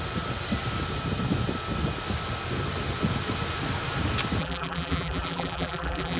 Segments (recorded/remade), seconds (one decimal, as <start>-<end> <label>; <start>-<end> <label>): 0.0-4.4 recorded; 4.4-6.2 remade

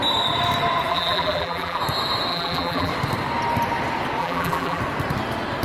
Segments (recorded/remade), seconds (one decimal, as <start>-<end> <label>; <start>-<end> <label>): 0.0-0.9 recorded; 0.9-1.8 remade; 1.8-2.3 recorded; 2.3-2.9 remade; 2.9-4.2 recorded; 4.2-4.8 remade; 4.8-5.6 recorded

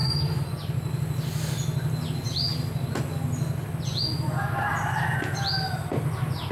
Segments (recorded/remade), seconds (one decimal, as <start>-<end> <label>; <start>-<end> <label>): 0.0-6.5 recorded

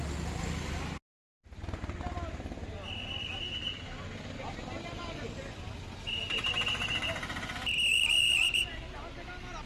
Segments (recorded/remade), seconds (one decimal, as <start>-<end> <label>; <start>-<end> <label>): 0.0-7.9 recorded; 7.9-8.8 remade; 8.8-9.7 recorded

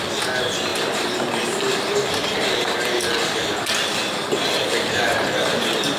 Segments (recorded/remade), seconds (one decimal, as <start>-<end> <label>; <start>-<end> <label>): 0.0-0.7 recorded; 0.7-1.3 remade; 1.3-6.0 recorded

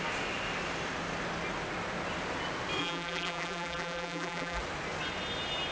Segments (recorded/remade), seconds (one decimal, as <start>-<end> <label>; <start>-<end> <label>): 0.0-2.8 recorded; 2.8-4.6 remade; 4.6-5.7 recorded

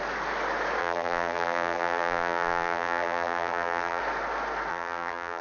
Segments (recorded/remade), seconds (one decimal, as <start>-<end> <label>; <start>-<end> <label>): 0.0-0.8 recorded; 0.8-4.0 remade; 4.0-4.7 recorded; 4.7-5.4 remade

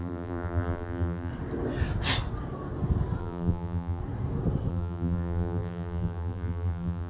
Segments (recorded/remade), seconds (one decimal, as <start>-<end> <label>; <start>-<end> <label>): 0.0-1.3 remade; 1.3-3.2 recorded; 3.2-4.0 remade; 4.0-4.7 recorded; 4.7-7.1 remade